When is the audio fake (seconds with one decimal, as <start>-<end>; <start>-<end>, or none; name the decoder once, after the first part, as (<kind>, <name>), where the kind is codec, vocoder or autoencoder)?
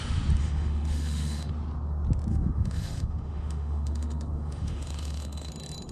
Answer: 0.4-1.5 (autoencoder, DAC-VAE); 2.3-5.5